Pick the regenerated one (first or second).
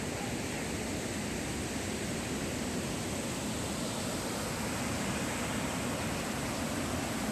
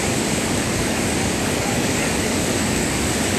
second